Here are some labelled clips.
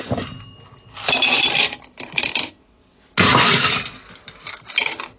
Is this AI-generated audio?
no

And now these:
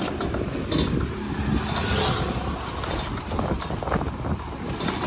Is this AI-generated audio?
no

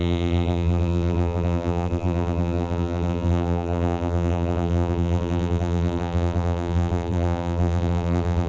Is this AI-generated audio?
yes